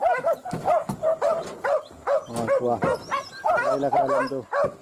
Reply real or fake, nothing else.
real